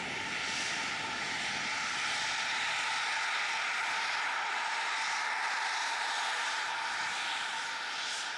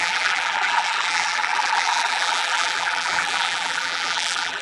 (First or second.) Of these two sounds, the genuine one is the first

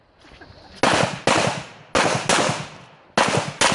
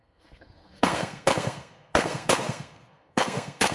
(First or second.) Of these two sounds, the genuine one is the first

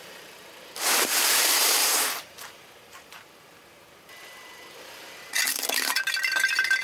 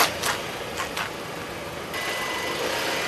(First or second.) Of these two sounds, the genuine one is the second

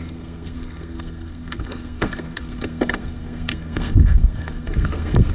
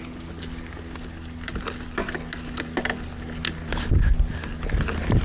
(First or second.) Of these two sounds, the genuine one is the second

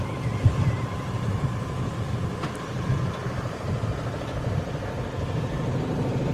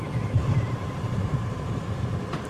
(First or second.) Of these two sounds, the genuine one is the first